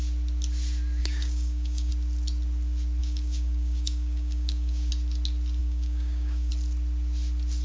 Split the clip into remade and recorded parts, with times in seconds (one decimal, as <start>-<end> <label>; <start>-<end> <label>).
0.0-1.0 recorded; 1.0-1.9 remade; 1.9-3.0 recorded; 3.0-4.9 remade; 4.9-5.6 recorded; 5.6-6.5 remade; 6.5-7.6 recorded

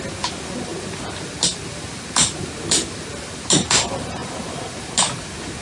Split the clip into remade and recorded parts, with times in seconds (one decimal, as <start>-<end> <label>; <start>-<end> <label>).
0.0-5.6 recorded

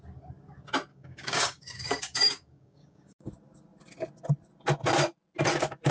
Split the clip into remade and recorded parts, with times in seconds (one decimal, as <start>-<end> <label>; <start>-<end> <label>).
0.0-0.9 recorded; 0.9-3.3 remade; 3.3-5.9 recorded